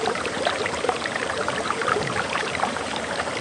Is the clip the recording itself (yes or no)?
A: no